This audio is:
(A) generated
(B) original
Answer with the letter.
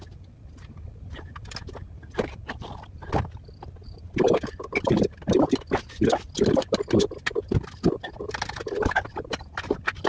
B